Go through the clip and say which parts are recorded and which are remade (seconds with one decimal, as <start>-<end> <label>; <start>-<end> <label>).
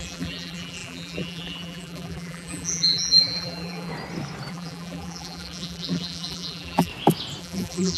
0.0-3.9 remade; 3.9-4.5 recorded; 4.5-6.9 remade; 6.9-7.4 recorded; 7.4-8.0 remade